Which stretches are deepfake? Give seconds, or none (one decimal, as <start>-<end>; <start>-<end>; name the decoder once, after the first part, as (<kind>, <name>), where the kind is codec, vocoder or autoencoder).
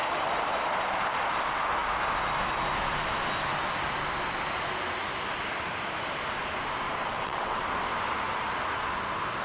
7.1-7.6 (vocoder, WaveNeXt)